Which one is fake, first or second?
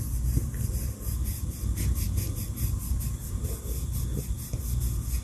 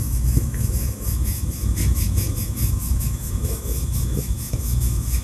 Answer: second